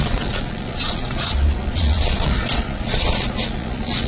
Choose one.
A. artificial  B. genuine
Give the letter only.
A